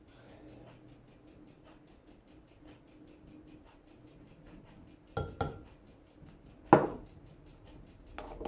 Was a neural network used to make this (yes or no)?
no